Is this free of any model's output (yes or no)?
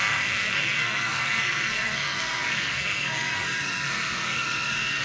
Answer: no